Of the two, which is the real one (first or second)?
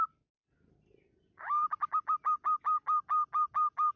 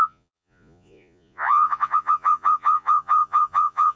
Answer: first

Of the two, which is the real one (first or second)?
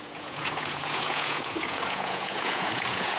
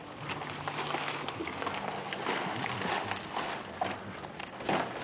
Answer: second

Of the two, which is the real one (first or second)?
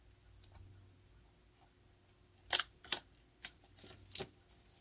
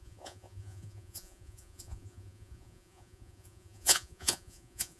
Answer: first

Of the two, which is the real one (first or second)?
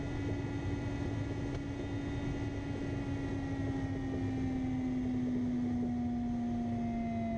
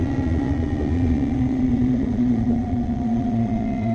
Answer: first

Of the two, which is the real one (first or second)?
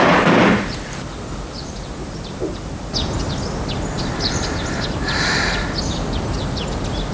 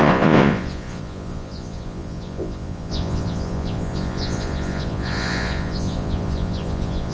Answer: first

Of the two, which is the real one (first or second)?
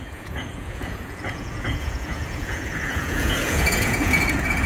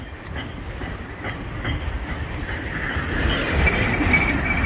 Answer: second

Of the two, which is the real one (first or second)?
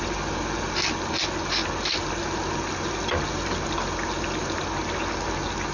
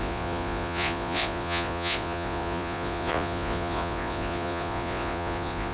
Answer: first